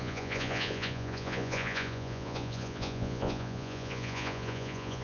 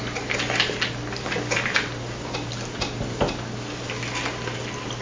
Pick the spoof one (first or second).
first